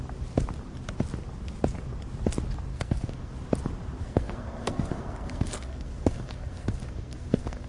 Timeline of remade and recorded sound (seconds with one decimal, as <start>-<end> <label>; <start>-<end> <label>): 0.0-2.7 recorded; 2.7-3.3 remade; 3.3-4.0 recorded; 4.0-7.7 remade